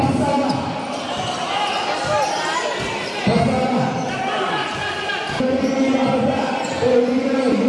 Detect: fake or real real